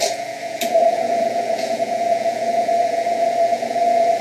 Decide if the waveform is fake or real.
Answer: fake